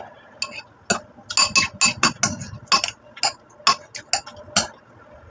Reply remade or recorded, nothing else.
recorded